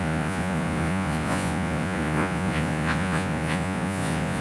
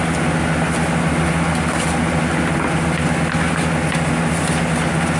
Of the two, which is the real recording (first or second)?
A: second